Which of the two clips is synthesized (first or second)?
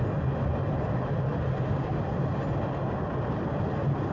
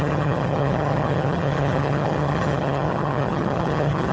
second